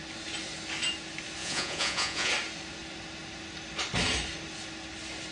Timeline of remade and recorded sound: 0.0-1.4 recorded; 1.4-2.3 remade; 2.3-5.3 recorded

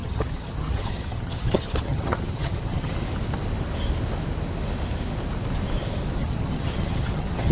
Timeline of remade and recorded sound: 0.0-2.9 remade; 2.9-6.2 recorded; 6.2-7.5 remade

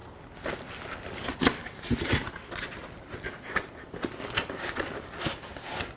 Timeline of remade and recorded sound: 0.0-6.0 recorded

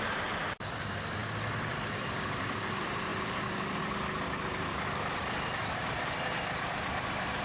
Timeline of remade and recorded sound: 0.0-7.4 remade

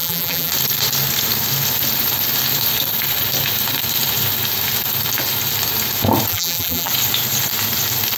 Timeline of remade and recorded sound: 0.0-0.5 remade; 0.5-6.3 recorded; 6.3-6.9 remade; 6.9-8.2 recorded

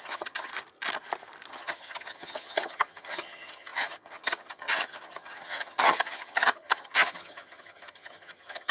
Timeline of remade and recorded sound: 0.0-0.5 remade; 0.5-1.5 recorded; 1.5-8.7 remade